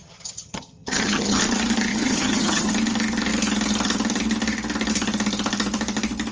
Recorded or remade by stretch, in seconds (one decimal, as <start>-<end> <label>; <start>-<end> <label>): 0.0-1.4 remade; 1.4-1.9 recorded; 1.9-2.7 remade; 2.7-6.3 recorded

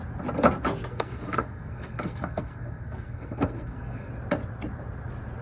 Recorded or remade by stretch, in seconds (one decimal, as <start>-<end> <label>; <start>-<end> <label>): 0.0-0.9 recorded; 0.9-4.1 remade; 4.1-5.4 recorded

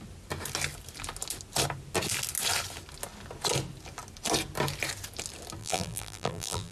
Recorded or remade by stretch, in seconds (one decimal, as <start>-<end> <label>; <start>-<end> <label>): 0.0-5.6 recorded; 5.6-6.7 remade

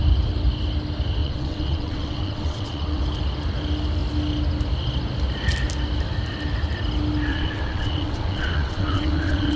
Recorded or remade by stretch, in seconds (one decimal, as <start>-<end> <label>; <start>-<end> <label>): 0.0-1.2 recorded; 1.2-3.0 remade; 3.0-7.3 recorded; 7.3-9.6 remade

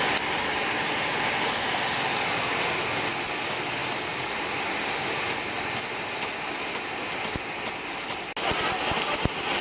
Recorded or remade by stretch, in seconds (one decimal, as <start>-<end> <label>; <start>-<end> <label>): 0.0-9.6 recorded

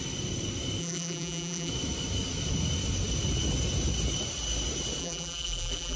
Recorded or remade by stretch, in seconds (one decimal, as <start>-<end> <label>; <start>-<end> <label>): 0.0-0.8 recorded; 0.8-1.7 remade; 1.7-5.0 recorded; 5.0-6.0 remade

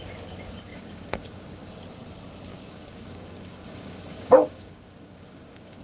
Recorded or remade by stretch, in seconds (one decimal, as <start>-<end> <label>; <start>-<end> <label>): 0.0-0.7 recorded; 0.7-1.7 remade; 1.7-2.5 recorded; 2.5-5.8 remade

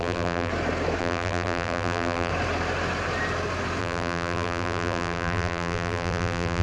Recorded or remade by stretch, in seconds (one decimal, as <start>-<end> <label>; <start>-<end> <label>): 0.0-0.5 remade; 0.5-1.0 recorded; 1.0-2.3 remade; 2.3-3.8 recorded; 3.8-6.6 remade